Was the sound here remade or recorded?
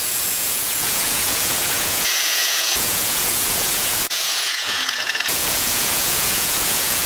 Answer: remade